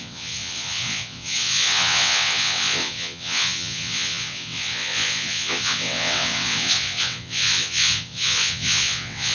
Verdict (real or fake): fake